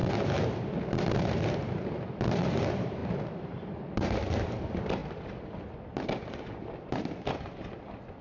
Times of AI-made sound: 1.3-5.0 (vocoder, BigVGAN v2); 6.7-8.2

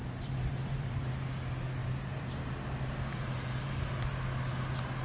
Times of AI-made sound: 0.0-1.2 (vocoder, BigVGAN v2); 1.8-2.4; 3.1-4.1

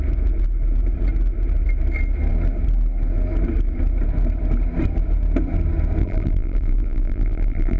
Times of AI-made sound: 6.0-7.8 (vocoder, BigVGAN v2)

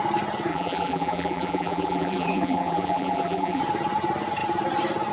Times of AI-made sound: 0.5-3.6 (vocoder, BigVGAN v2)

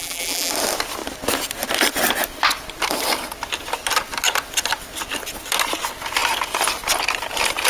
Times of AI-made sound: 0.0-0.5 (vocoder, BigVGAN v2)